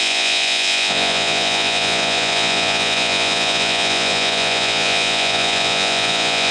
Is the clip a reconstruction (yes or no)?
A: yes